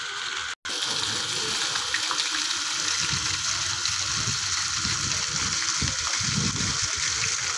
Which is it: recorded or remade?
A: recorded